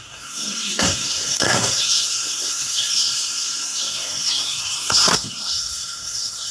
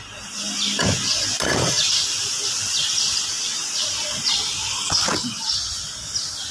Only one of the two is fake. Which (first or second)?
first